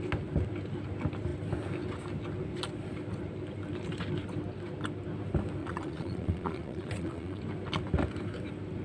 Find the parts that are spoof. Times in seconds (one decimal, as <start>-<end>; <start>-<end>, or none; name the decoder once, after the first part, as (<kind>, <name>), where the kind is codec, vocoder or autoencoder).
5.6-7.4 (vocoder, Vocos)